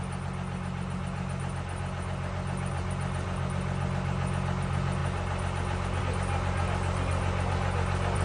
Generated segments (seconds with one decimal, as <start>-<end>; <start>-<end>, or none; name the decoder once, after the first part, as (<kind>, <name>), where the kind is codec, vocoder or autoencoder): none